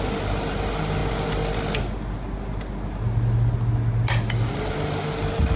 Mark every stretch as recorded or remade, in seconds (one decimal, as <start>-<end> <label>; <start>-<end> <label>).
0.0-5.6 recorded